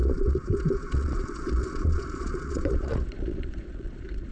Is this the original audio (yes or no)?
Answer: no